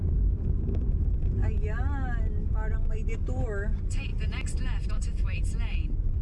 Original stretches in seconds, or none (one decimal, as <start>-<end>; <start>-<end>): 0.0-6.2